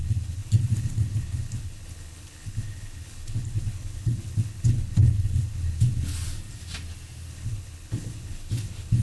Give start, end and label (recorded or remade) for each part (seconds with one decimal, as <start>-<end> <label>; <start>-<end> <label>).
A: 0.0-6.1 remade; 6.1-7.3 recorded; 7.3-9.0 remade